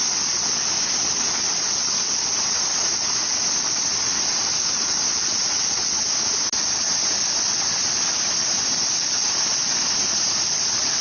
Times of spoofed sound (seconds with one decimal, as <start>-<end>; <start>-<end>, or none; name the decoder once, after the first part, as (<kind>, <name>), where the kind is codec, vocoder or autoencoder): 4.3-5.8 (vocoder, BigVGAN v2)